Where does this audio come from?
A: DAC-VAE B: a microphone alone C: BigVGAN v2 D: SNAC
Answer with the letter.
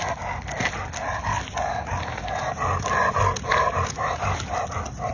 B